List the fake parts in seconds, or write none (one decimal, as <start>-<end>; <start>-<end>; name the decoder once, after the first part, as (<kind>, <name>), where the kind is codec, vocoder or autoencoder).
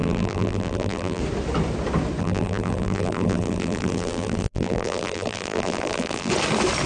0.0-1.2 (vocoder, BigVGAN v2); 2.2-6.3